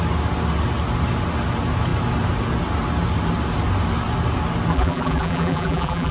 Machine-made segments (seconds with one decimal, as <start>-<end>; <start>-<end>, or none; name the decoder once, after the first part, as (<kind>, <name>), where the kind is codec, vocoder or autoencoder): 4.7-6.1 (vocoder, BigVGAN v2)